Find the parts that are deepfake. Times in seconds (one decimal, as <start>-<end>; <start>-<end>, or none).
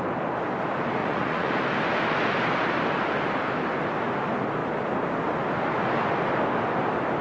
1.0-1.5